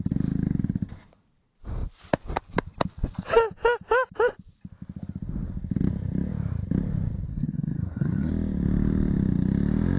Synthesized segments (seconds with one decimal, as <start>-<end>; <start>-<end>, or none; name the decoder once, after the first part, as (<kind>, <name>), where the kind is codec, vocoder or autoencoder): 7.3-8.3 (codec, SNAC)